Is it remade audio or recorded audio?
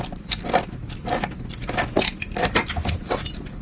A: recorded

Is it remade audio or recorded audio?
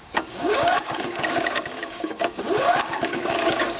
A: remade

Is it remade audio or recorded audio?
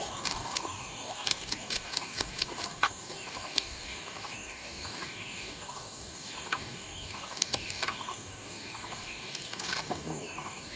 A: remade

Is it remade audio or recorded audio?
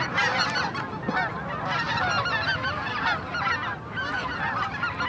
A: recorded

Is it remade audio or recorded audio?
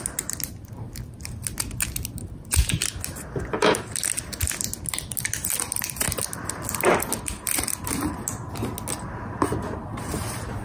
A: recorded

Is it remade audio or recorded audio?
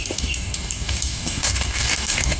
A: remade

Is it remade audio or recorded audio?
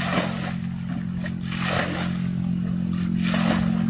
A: recorded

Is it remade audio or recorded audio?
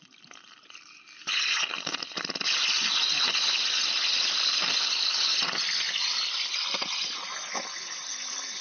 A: recorded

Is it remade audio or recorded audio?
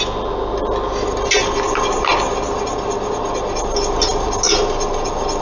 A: recorded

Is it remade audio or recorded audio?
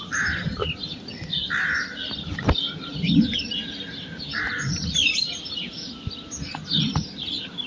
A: recorded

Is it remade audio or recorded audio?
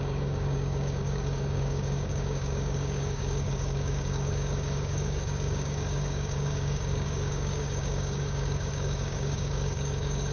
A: remade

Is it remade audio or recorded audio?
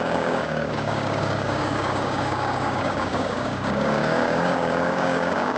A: remade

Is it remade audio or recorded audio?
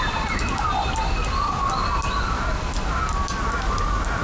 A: recorded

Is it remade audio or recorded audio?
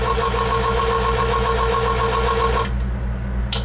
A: recorded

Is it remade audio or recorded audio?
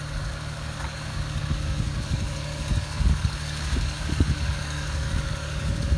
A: remade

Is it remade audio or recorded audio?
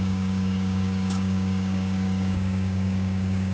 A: remade